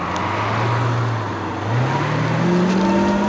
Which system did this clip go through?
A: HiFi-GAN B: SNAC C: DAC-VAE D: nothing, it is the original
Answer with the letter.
D